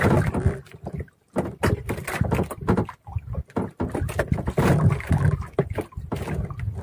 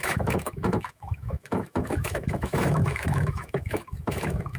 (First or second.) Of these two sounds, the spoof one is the second